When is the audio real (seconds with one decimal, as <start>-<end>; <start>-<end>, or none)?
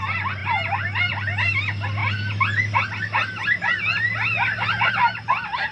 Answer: 0.0-5.7